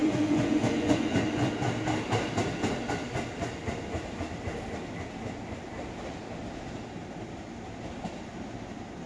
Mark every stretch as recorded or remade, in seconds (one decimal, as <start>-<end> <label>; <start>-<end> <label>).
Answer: 0.0-1.5 remade; 1.5-9.1 recorded